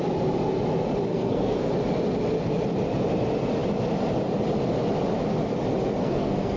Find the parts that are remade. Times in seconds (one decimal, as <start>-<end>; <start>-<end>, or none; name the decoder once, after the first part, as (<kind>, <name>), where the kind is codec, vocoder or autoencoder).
1.1-1.7 (codec, SNAC); 6.0-6.6